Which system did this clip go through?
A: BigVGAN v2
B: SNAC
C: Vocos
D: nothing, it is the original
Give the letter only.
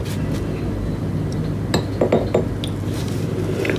D